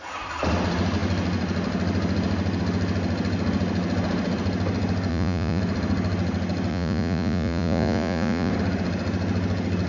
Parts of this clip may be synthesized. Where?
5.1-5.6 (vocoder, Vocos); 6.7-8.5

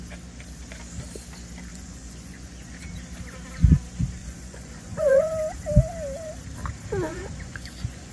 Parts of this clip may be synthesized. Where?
1.7-2.8 (vocoder, Vocos); 4.2-5.3; 7.1-8.1

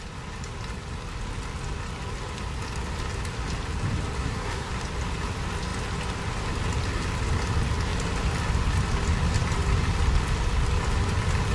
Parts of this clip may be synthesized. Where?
4.2-4.7 (codec, SNAC)

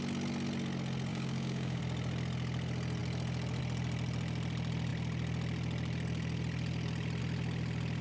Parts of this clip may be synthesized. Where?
1.1-1.8 (codec, DAC)

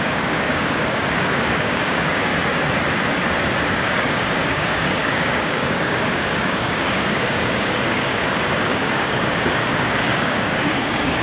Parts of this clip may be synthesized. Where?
0.0-2.3 (codec, DAC); 3.7-11.2